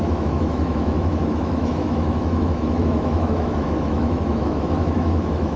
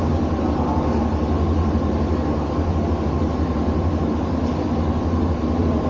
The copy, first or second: first